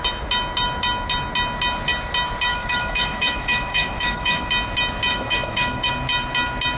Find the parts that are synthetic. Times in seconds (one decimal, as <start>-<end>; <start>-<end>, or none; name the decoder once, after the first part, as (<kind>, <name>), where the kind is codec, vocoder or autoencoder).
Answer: 2.5-4.5 (autoencoder, DAC-VAE); 5.1-5.9

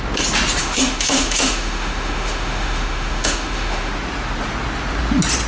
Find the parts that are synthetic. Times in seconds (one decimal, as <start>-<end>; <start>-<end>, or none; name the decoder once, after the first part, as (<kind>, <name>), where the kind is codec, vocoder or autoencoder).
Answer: 0.6-3.9 (autoencoder, DAC-VAE)

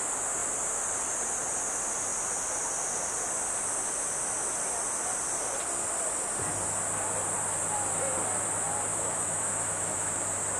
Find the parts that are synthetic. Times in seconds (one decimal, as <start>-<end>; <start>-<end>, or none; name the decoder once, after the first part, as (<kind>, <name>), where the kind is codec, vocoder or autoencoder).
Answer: 8.9-10.1 (autoencoder, DAC-VAE)

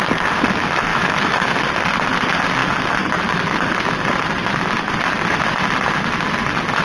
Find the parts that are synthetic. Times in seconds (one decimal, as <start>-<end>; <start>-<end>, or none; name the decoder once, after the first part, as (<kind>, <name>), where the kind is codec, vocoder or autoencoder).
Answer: 0.9-1.6 (autoencoder, DAC-VAE)